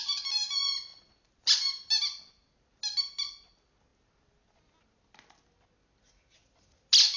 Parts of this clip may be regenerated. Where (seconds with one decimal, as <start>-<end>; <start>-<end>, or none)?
none